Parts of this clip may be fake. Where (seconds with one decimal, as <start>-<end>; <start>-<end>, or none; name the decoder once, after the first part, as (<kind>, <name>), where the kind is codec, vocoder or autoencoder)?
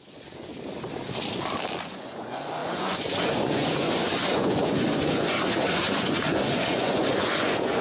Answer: 0.0-0.5 (vocoder, Vocos); 1.8-7.8